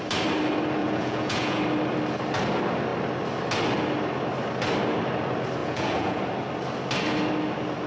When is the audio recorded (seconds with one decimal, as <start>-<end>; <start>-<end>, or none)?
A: 0.0-0.8; 1.6-5.6; 6.2-7.9